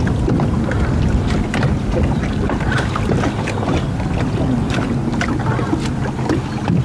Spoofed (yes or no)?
no